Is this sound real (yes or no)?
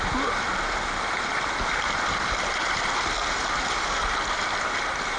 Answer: yes